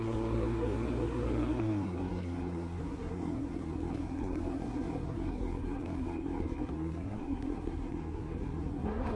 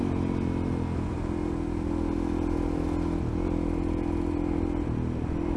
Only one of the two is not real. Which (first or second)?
first